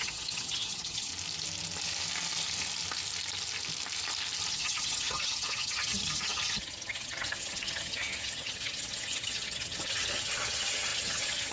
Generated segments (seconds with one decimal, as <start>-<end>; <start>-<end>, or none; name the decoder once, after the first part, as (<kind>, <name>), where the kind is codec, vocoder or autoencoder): 0.0-1.1 (vocoder, HiFi-GAN); 4.5-11.5